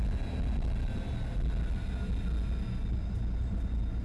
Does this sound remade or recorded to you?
recorded